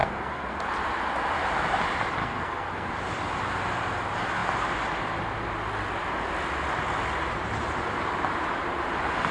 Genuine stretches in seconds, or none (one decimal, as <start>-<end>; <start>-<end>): 0.6-2.2; 2.9-9.3